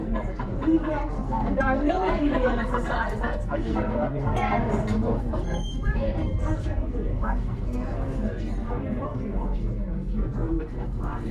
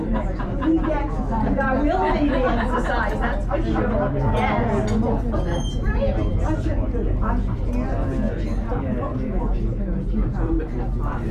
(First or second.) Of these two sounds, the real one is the second